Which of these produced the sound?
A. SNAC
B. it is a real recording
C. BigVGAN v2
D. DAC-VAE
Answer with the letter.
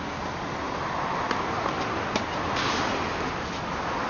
B